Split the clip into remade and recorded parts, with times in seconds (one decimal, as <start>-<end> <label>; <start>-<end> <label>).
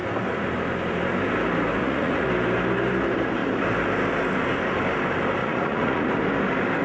0.0-1.8 recorded; 1.8-2.3 remade; 2.3-5.4 recorded; 5.4-6.1 remade; 6.1-6.8 recorded